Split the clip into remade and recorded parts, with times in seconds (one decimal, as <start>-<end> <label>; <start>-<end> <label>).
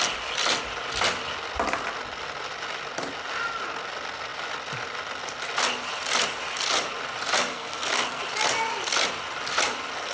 0.0-7.5 recorded; 7.5-8.2 remade; 8.2-10.1 recorded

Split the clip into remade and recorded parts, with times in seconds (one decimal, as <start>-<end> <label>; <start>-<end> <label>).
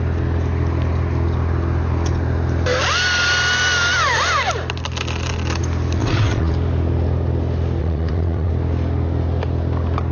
0.0-6.0 recorded; 6.0-6.5 remade; 6.5-7.8 recorded; 7.8-8.5 remade; 8.5-10.1 recorded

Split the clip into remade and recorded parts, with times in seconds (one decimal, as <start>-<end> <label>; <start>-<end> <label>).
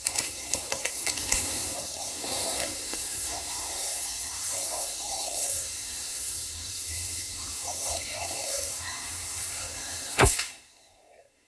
0.0-11.5 remade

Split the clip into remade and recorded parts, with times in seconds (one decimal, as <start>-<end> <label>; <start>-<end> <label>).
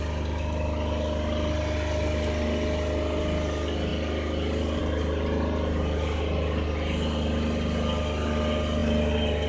0.0-9.5 recorded